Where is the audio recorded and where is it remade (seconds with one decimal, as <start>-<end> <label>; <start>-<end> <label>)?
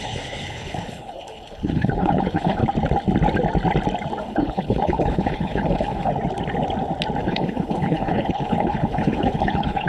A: 0.0-2.6 remade; 2.6-4.2 recorded; 4.2-6.1 remade; 6.1-7.2 recorded; 7.2-9.9 remade